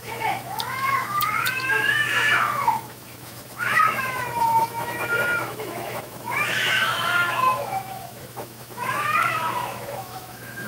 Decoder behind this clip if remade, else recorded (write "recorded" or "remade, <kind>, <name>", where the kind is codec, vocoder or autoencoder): remade, autoencoder, DAC-VAE